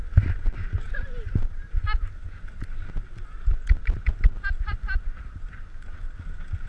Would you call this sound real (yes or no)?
yes